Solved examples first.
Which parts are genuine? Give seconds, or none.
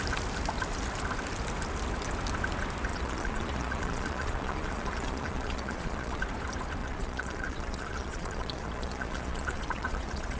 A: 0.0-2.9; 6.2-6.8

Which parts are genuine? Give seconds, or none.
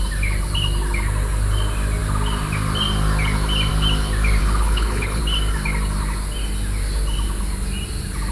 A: 0.0-4.4; 5.2-8.3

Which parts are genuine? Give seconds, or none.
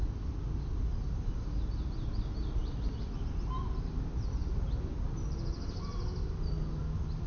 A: 0.0-7.3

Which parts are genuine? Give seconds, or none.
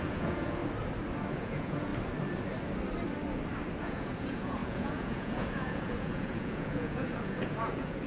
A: 0.6-1.3; 1.9-3.8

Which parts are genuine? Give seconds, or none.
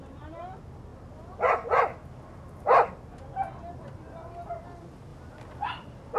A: 0.0-6.2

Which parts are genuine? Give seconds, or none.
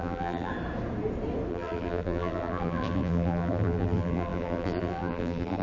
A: 0.5-1.5